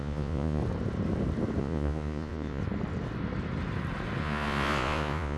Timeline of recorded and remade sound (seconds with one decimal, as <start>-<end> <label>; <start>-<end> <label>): 0.0-0.6 remade; 0.6-1.6 recorded; 1.6-2.6 remade; 2.6-4.2 recorded; 4.2-5.4 remade